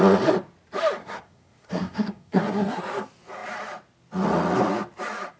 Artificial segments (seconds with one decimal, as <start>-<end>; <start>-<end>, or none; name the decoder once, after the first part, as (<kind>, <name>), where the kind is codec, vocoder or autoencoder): 1.0-2.8 (codec, SNAC)